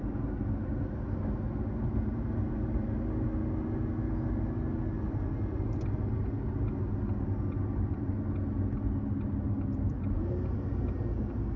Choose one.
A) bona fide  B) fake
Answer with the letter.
A